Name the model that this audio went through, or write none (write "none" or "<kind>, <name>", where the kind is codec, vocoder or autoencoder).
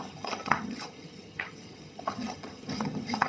vocoder, HiFi-GAN